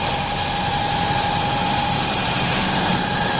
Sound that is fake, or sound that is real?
real